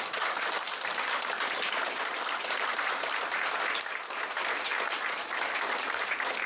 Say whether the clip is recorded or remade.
remade